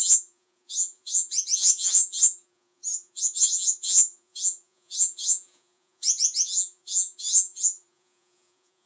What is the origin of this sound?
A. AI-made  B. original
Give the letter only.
A